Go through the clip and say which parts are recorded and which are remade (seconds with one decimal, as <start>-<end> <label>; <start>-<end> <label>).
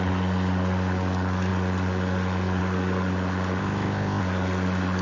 0.0-3.6 recorded; 3.6-4.2 remade; 4.2-5.0 recorded